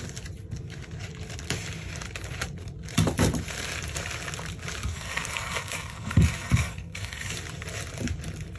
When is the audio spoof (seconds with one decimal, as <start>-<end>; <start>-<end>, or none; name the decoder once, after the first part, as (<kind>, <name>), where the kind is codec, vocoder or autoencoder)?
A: 4.9-7.3 (codec, SNAC)